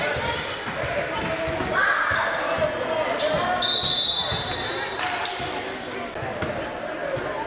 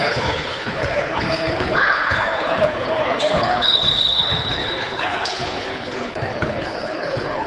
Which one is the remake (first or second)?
second